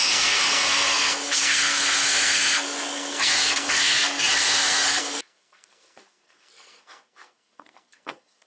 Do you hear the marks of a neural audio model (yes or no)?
yes